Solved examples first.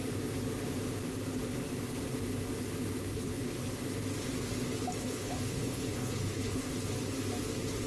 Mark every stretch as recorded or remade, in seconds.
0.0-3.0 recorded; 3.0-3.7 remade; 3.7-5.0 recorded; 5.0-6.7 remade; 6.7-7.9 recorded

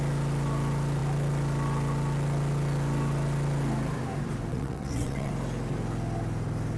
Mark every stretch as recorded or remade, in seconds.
0.0-4.5 recorded; 4.5-5.3 remade; 5.3-6.8 recorded

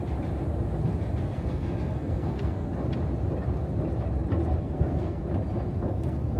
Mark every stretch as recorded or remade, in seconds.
0.0-1.2 recorded; 1.2-2.7 remade; 2.7-4.6 recorded; 4.6-5.2 remade; 5.2-5.9 recorded; 5.9-6.4 remade